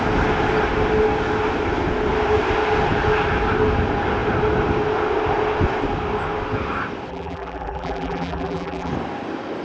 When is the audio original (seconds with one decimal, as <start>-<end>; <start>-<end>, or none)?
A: 0.0-7.1; 8.9-9.6